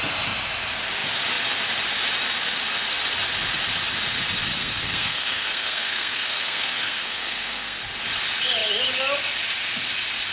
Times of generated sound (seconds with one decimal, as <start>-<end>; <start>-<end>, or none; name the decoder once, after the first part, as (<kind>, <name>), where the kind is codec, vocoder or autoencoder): 4.6-7.8 (codec, SNAC)